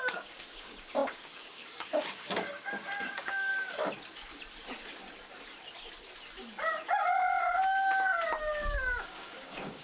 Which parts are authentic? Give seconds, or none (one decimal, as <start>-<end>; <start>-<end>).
3.5-8.4